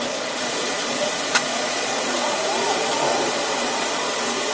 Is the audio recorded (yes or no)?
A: no